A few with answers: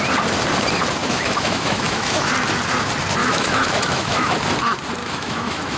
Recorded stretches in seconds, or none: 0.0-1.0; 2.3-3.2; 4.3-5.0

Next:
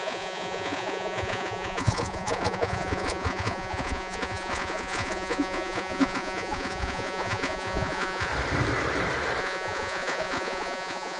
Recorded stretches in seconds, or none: 8.3-9.4

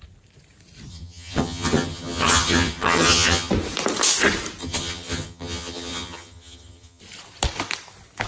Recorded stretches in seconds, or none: 0.0-0.9; 3.5-4.6; 7.0-8.3

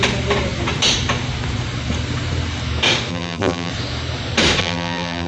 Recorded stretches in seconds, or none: 0.0-3.1; 3.7-4.6